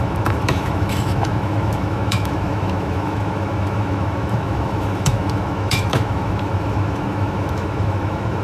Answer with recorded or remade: remade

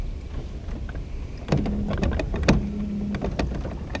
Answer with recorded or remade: recorded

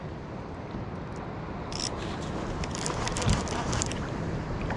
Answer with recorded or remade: recorded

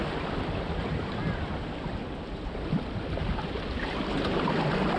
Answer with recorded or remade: recorded